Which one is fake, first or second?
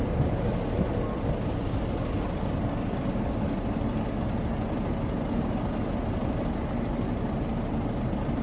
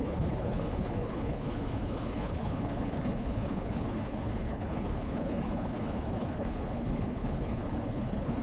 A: second